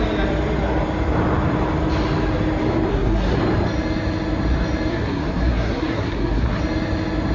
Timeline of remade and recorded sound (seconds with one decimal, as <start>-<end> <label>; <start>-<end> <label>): 0.0-2.9 recorded; 2.9-3.4 remade; 3.4-4.9 recorded; 4.9-6.6 remade; 6.6-7.3 recorded